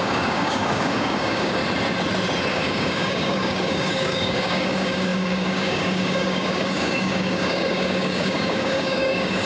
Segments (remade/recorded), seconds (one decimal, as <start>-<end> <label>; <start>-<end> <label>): 0.0-1.6 remade; 1.6-2.5 recorded; 2.5-9.5 remade